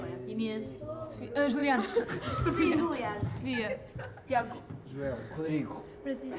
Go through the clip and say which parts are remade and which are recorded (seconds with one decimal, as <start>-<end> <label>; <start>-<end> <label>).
0.0-3.9 recorded; 3.9-4.6 remade; 4.6-6.4 recorded